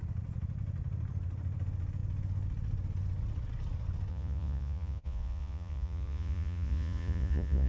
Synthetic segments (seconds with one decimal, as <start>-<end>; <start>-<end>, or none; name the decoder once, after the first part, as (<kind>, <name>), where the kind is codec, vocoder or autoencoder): 4.1-7.7 (vocoder, Vocos)